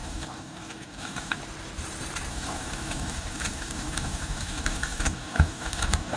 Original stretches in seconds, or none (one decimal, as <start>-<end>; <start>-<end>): 1.4-2.3